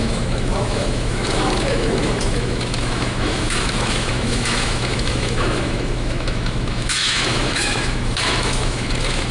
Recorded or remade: remade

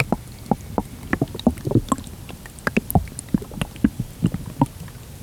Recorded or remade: recorded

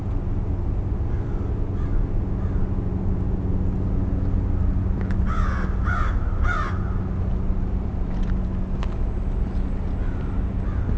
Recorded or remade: recorded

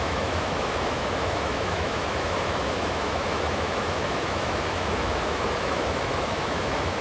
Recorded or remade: remade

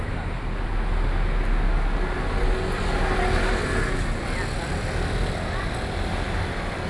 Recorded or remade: recorded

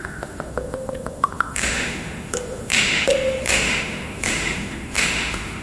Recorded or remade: remade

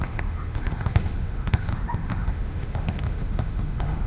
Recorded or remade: remade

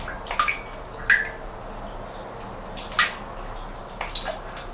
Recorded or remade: recorded